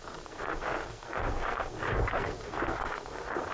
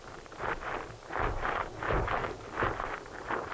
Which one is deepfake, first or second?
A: first